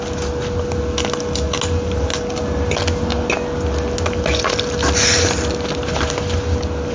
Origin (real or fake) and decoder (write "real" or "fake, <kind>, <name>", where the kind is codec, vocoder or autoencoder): real